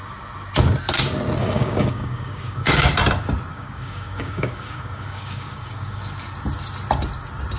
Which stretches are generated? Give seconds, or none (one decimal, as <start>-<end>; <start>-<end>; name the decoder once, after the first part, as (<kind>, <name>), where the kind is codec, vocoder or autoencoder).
1.4-2.9 (codec, DAC); 3.5-6.0